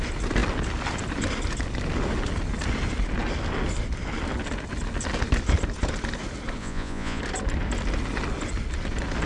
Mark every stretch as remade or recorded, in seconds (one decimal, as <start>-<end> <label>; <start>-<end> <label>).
0.0-6.6 recorded; 6.6-7.2 remade; 7.2-9.3 recorded